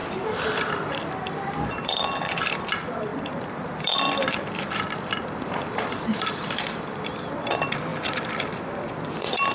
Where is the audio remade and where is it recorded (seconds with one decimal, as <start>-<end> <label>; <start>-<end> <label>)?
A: 0.0-0.7 recorded; 0.7-9.5 remade